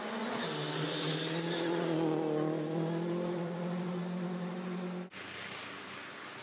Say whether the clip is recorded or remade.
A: recorded